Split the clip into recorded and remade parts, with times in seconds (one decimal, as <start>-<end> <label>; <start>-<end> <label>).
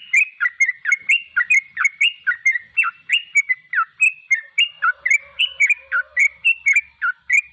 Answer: 0.0-7.5 recorded